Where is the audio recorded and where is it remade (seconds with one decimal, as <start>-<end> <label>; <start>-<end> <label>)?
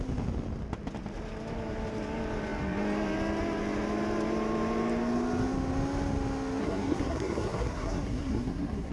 0.0-6.6 recorded; 6.6-8.9 remade